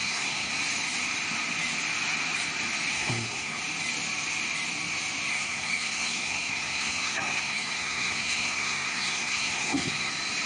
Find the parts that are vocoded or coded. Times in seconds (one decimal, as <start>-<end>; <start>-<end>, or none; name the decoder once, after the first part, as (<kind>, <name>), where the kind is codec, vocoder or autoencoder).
0.0-0.5 (codec, SNAC); 2.9-3.6; 5.3-10.1